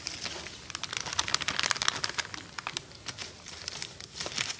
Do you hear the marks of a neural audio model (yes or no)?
no